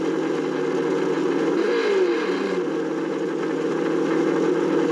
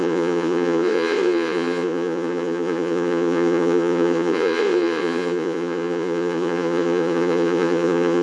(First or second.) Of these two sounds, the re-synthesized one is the second